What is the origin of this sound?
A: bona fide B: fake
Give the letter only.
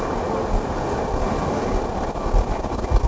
A